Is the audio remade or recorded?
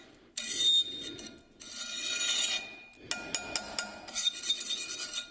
recorded